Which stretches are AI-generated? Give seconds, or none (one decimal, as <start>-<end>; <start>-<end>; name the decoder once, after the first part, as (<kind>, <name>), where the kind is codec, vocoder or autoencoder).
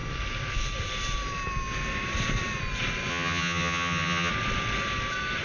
3.1-4.3 (vocoder, HiFi-GAN)